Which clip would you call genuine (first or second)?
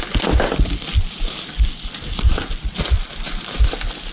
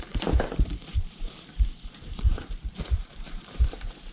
first